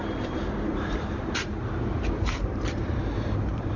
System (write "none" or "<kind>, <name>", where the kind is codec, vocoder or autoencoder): vocoder, BigVGAN v2